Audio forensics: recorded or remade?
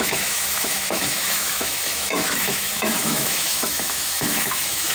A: remade